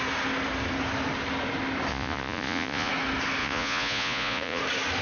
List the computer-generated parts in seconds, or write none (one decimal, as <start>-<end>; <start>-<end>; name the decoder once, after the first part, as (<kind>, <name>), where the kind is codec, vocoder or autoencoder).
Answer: 1.9-2.9 (vocoder, Vocos); 3.4-4.6